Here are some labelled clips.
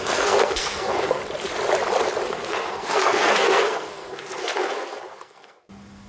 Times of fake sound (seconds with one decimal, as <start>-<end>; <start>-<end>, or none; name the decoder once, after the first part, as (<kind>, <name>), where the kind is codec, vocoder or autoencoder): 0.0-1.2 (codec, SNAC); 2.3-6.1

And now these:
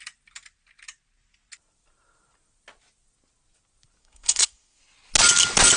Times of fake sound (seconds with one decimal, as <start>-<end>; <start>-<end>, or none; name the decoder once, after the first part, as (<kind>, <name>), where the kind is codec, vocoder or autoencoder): 4.0-4.8 (codec, SNAC)

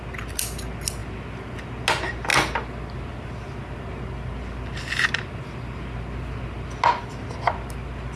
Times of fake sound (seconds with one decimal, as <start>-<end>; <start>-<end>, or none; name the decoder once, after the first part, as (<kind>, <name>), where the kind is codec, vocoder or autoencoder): none